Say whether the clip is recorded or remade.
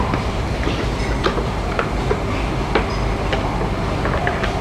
recorded